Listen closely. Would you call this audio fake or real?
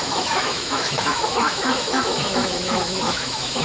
fake